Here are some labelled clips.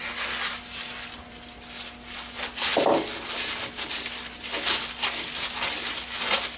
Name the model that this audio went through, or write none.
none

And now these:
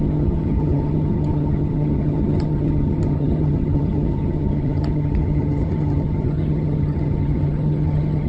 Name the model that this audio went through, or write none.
vocoder, HiFi-GAN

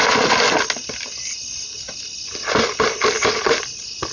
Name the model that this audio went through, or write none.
none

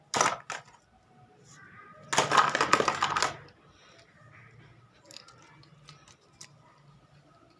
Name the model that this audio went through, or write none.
none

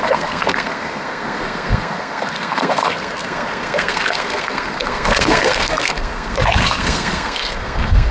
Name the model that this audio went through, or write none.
codec, SNAC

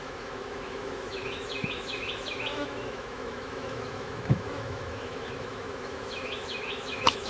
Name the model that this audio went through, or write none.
autoencoder, DAC-VAE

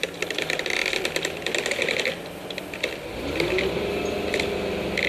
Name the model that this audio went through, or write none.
none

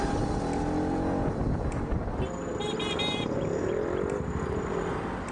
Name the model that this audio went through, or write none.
none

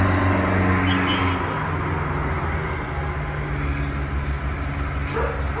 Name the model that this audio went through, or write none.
none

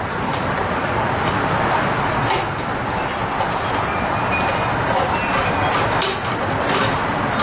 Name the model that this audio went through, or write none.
none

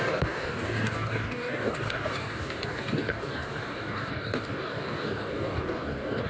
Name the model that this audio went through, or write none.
codec, DAC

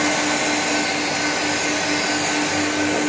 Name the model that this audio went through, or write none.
none